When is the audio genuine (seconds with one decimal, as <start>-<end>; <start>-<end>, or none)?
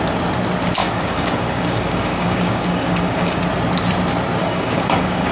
0.0-0.8; 3.4-4.4